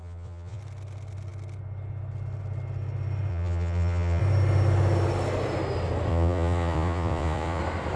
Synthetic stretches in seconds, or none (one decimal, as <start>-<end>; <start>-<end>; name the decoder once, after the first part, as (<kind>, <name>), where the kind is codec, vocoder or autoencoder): 0.0-0.6 (vocoder, Vocos); 3.3-4.2; 6.1-7.6